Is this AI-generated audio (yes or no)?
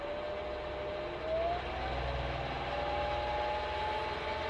no